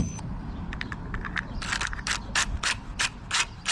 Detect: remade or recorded remade